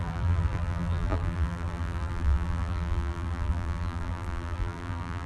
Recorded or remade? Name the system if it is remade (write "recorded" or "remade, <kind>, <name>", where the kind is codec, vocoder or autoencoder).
remade, vocoder, BigVGAN v2